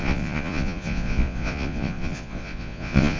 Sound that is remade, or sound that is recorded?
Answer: remade